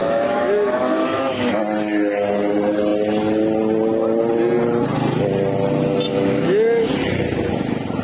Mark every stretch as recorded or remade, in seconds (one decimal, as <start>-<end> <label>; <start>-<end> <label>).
0.0-1.6 remade; 1.6-6.1 recorded; 6.1-6.9 remade; 6.9-8.0 recorded